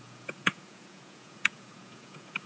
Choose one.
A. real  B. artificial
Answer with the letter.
B